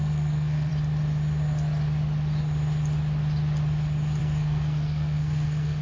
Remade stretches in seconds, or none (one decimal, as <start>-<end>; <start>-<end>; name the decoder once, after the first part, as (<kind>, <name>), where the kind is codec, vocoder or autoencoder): 0.0-0.7 (codec, SNAC); 4.2-5.8